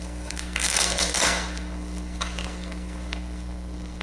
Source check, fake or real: fake